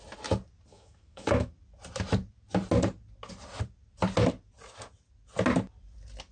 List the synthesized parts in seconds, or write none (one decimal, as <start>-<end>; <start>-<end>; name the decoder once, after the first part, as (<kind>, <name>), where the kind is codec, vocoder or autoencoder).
0.7-1.5 (autoencoder, DAC-VAE)